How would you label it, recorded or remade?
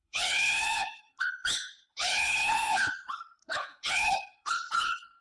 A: remade